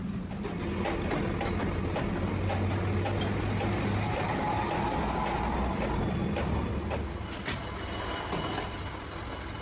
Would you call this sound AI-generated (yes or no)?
no